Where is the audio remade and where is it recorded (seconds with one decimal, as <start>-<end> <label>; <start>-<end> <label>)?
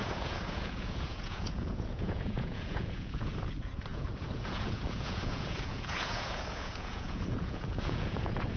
0.0-8.6 remade